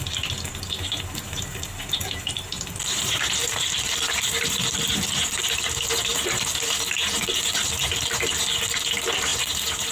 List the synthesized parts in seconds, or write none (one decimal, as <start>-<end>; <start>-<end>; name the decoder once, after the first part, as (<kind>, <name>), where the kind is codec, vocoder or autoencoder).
3.4-4.8 (vocoder, BigVGAN v2); 6.1-6.7